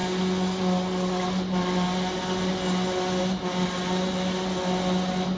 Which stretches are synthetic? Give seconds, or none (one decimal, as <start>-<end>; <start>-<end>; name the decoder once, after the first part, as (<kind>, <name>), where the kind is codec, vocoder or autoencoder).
none